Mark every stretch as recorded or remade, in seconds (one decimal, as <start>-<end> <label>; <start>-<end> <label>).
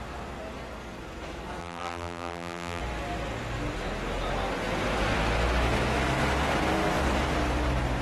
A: 0.0-1.6 recorded; 1.6-2.8 remade; 2.8-8.0 recorded